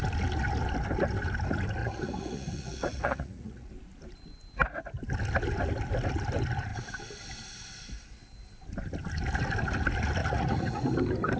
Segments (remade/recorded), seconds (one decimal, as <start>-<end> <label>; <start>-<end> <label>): 0.0-1.8 recorded; 1.8-3.7 remade; 3.7-10.2 recorded; 10.2-10.8 remade; 10.8-11.4 recorded